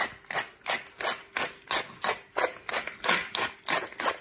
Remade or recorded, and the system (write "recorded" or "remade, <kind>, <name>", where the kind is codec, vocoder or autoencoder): recorded